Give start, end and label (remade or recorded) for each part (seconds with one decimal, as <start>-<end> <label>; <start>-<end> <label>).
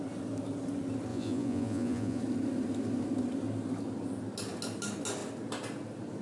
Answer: 0.0-1.1 recorded; 1.1-2.2 remade; 2.2-6.2 recorded